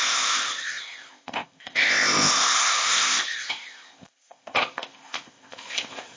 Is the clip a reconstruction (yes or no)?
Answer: yes